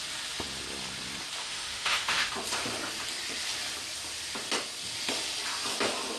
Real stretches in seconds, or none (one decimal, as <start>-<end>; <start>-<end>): 0.0-1.4; 2.3-6.2